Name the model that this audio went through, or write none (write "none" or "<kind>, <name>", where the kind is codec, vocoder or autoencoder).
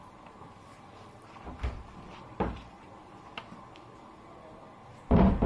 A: vocoder, BigVGAN v2